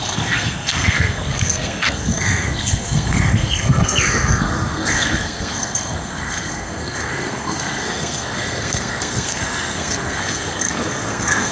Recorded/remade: remade